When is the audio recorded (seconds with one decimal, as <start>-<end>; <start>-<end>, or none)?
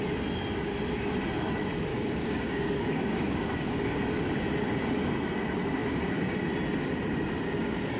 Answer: 0.0-1.9; 4.0-8.0